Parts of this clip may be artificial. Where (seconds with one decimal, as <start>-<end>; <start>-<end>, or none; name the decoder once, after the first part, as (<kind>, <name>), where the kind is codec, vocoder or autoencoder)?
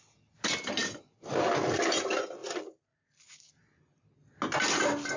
0.8-2.0 (vocoder, BigVGAN v2); 2.4-3.5